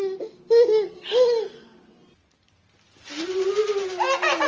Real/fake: real